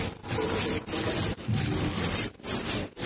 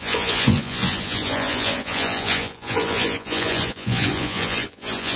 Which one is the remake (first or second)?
second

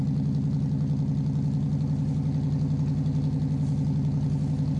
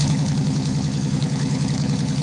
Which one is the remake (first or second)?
second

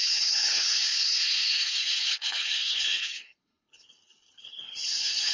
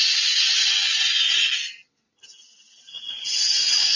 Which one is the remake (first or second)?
first